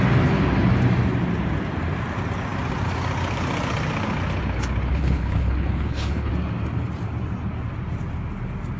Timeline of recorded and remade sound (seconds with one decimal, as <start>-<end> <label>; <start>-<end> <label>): 0.0-4.9 recorded; 4.9-6.3 remade; 6.3-8.8 recorded